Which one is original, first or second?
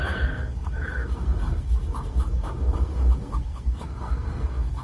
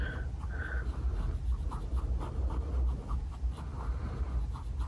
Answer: second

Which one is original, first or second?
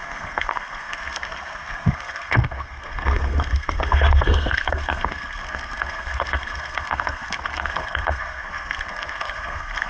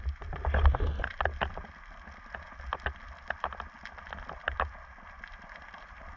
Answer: second